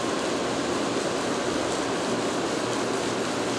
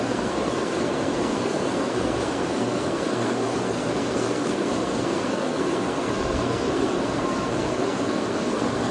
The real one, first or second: first